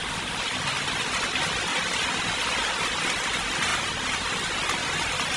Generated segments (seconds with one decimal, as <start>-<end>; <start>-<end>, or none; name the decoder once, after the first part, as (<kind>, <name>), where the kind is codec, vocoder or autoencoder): none